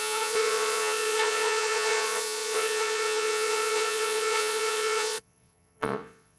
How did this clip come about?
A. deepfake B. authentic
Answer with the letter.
A